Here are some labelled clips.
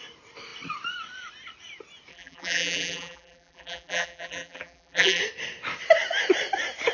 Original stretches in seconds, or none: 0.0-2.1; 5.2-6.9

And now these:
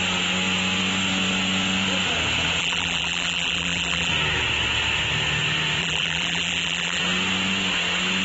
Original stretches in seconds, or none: 0.0-2.6; 4.1-5.8; 7.0-8.2

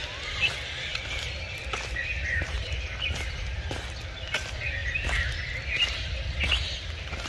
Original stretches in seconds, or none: 0.0-0.9; 1.6-2.0; 3.0-7.3

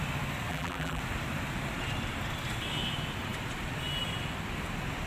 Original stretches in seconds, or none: 0.0-0.5; 1.0-5.1